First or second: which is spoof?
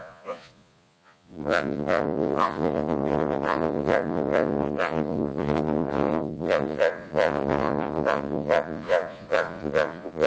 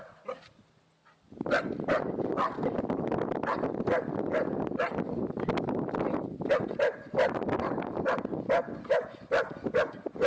first